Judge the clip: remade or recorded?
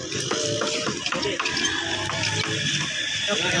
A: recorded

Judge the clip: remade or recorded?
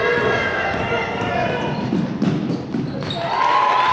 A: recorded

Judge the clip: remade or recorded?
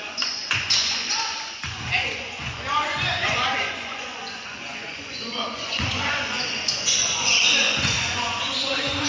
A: remade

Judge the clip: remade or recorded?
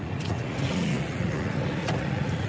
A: remade